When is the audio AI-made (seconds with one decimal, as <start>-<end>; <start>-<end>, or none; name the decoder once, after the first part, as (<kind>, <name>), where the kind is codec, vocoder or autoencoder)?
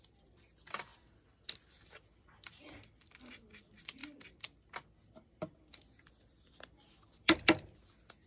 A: 0.0-8.3 (vocoder, BigVGAN v2)